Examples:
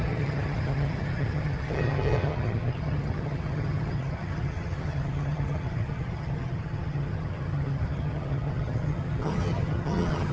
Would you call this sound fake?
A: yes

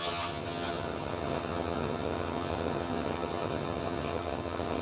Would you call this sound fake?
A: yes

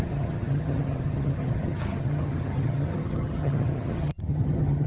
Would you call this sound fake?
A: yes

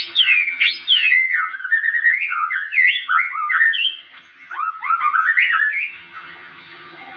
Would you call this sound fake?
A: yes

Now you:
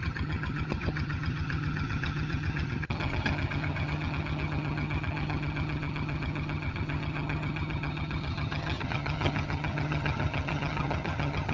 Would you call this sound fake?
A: yes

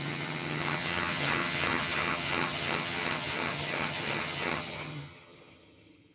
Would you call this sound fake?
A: yes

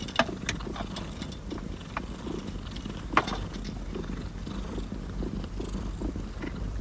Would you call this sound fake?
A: no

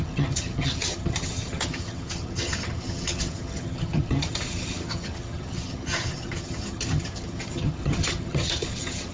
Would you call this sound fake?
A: yes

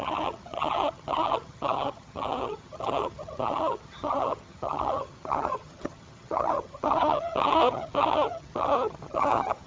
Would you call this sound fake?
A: yes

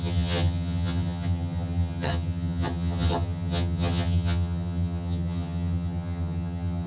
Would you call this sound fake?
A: yes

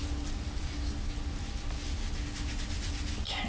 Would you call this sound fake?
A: no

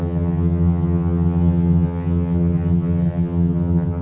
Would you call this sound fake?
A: yes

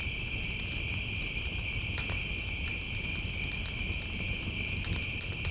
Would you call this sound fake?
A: no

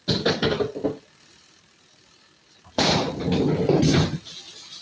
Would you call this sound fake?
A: no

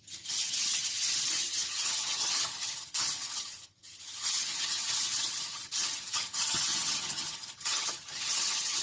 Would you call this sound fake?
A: yes